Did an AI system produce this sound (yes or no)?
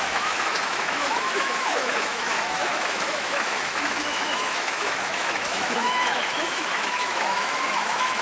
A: yes